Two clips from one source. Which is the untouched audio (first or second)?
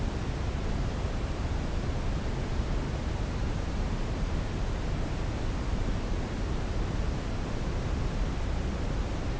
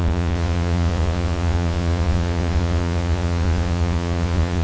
first